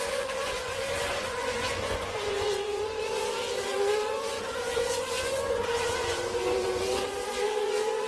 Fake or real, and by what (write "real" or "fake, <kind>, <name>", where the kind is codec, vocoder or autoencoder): fake, vocoder, Vocos